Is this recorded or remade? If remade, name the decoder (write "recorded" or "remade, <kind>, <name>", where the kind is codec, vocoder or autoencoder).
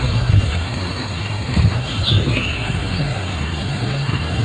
remade, codec, SNAC